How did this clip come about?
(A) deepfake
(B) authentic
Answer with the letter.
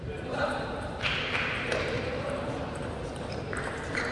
A